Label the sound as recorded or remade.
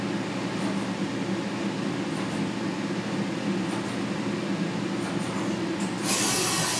recorded